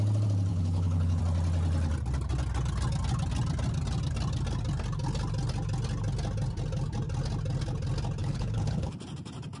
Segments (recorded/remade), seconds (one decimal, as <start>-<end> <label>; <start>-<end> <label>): 0.0-0.5 recorded; 0.5-1.2 remade; 1.2-8.2 recorded; 8.2-8.9 remade; 8.9-9.6 recorded